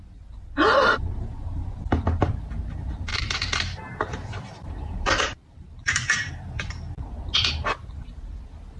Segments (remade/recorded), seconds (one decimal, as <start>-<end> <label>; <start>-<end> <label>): 0.0-3.1 recorded; 3.1-6.3 remade; 6.3-8.8 recorded